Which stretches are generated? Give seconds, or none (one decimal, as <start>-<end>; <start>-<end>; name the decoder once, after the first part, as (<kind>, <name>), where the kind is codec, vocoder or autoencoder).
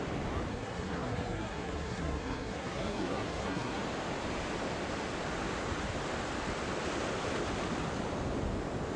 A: 0.5-3.8 (codec, SNAC)